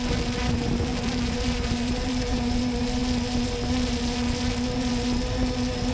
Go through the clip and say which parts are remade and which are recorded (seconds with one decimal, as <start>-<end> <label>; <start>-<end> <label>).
0.0-0.9 recorded; 0.9-2.6 remade; 2.6-5.9 recorded